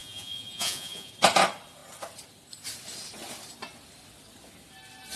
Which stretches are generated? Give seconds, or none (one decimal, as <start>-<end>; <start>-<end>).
0.0-1.1